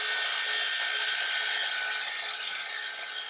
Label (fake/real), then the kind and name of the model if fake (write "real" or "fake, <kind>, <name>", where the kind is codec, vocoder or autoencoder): real